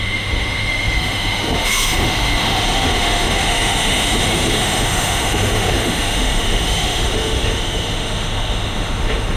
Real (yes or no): no